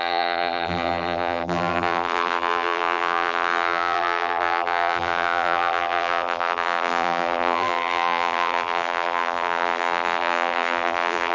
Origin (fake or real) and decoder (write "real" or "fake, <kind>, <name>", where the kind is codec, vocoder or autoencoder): fake, vocoder, BigVGAN v2